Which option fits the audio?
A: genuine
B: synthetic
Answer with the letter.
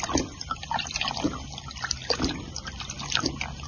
A